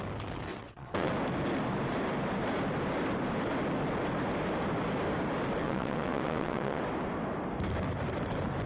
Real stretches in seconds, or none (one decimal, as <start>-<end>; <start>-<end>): 0.0-0.5; 1.1-5.6; 6.8-8.7